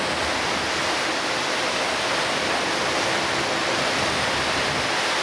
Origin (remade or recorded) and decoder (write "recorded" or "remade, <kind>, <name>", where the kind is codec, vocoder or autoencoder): recorded